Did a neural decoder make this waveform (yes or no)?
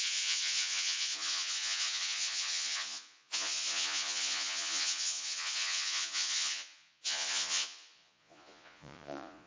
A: yes